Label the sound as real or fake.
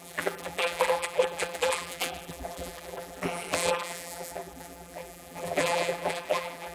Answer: fake